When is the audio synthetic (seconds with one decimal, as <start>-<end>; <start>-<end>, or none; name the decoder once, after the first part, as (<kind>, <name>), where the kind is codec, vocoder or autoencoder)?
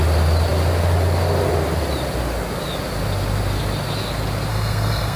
4.5-5.2 (codec, SNAC)